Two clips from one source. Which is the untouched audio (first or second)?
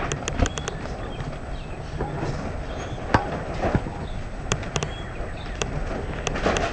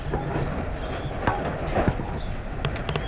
second